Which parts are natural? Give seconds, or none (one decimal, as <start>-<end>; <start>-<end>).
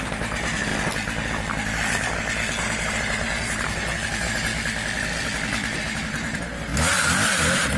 0.7-2.6; 4.5-5.8; 6.7-7.3